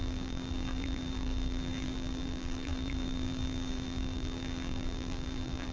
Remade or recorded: remade